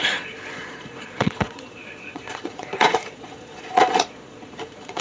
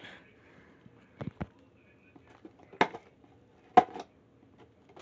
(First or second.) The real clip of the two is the second